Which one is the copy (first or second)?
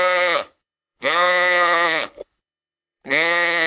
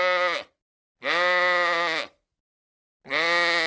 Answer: first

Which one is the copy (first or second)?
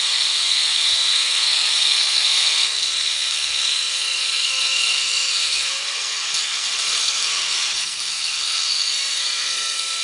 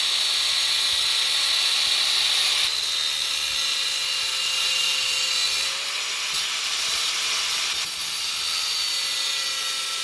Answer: first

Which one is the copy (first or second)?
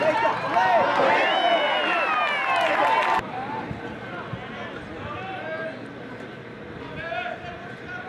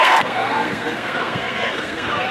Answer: second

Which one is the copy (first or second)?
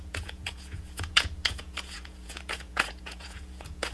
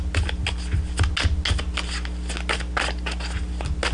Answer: first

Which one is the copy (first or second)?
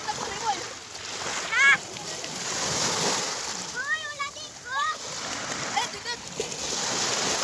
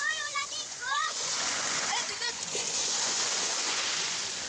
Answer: second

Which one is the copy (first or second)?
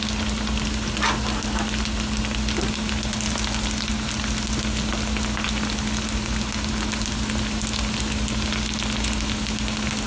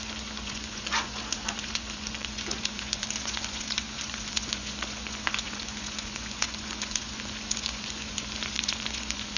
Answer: second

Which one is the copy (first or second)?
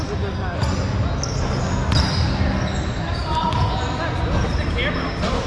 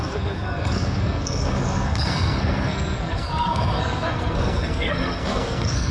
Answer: second